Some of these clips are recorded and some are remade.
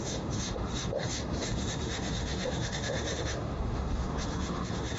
remade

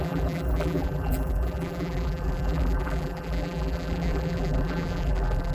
remade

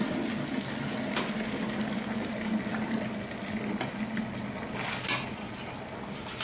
recorded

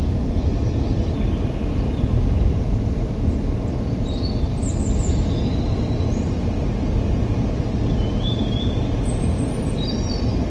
recorded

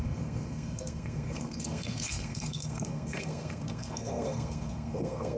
remade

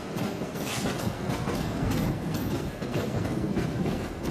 remade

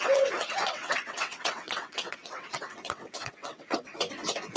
remade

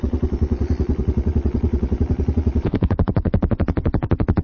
remade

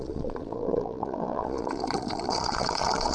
remade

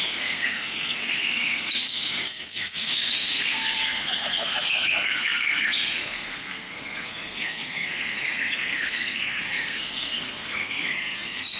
remade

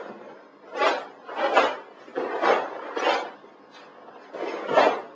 recorded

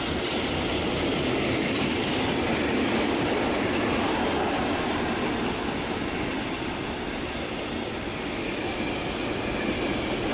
recorded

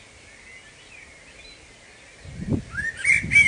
recorded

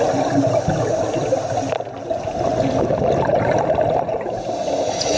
recorded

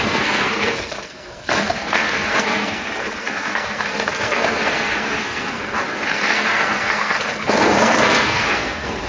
remade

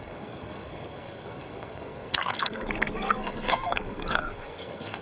remade